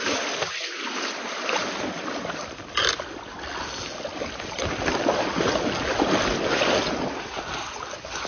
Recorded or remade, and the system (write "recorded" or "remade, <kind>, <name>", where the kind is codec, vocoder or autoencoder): recorded